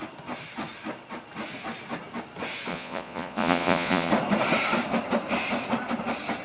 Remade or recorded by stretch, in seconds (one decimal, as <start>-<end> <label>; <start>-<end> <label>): 0.0-2.7 recorded; 2.7-4.1 remade; 4.1-6.4 recorded